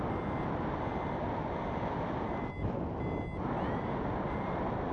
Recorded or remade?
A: recorded